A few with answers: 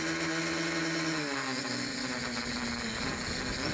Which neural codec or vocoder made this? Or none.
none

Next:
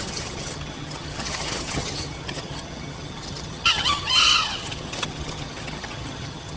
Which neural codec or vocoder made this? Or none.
vocoder, HiFi-GAN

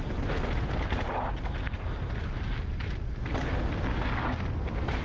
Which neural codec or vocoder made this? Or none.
none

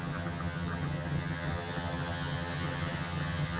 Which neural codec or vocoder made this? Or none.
vocoder, HiFi-GAN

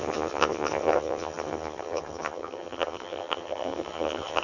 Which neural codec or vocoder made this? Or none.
vocoder, HiFi-GAN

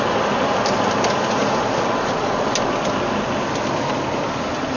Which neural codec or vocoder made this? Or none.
none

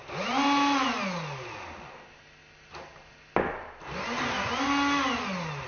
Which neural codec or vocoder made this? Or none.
none